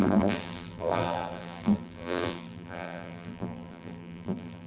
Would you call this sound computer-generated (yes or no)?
yes